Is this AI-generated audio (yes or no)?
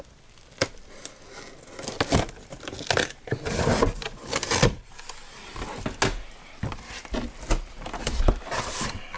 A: no